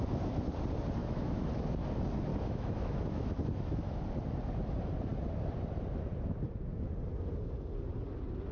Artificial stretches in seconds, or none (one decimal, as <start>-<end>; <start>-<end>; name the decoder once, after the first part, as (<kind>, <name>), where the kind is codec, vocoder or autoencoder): 1.0-1.5 (autoencoder, DAC-VAE); 2.3-4.0